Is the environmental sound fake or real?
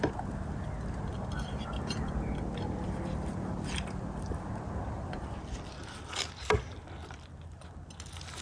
real